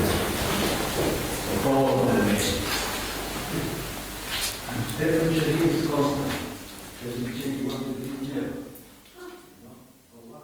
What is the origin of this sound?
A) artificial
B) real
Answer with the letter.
B